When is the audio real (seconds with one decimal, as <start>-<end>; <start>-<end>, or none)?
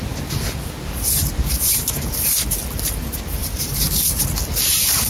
0.0-1.2; 2.1-3.4; 4.2-5.1